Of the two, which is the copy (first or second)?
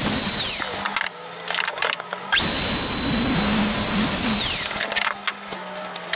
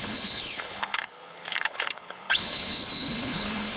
second